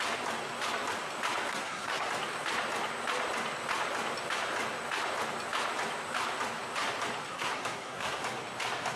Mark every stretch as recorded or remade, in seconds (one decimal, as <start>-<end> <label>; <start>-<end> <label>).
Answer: 0.0-1.5 recorded; 1.5-2.1 remade; 2.1-7.3 recorded; 7.3-8.2 remade; 8.2-9.0 recorded